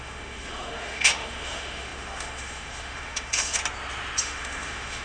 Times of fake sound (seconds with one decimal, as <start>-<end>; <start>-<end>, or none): 0.0-3.6; 4.2-5.0